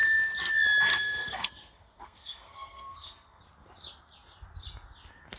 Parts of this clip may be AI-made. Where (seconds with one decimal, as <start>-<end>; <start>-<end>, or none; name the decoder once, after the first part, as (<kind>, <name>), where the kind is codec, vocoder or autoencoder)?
0.9-3.4 (codec, SNAC)